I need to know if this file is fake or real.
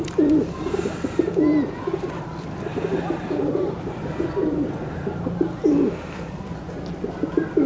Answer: real